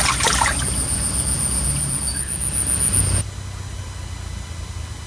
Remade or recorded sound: recorded